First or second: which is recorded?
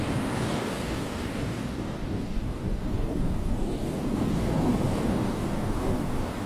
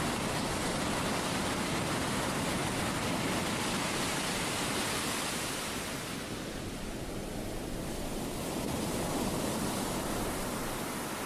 second